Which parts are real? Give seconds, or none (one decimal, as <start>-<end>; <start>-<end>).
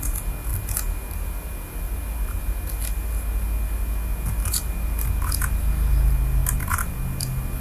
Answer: 0.0-7.6